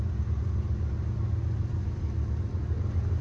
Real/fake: real